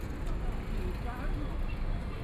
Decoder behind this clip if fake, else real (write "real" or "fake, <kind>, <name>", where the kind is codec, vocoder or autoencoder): real